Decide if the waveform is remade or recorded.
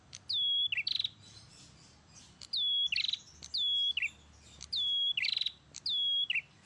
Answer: recorded